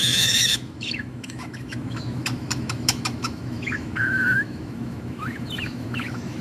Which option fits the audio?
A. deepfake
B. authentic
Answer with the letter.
A